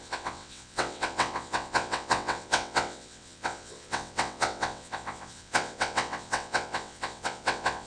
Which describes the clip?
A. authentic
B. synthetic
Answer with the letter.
B